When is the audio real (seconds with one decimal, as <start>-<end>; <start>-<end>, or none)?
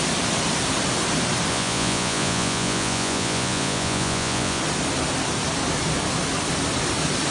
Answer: 0.0-1.5; 4.6-7.3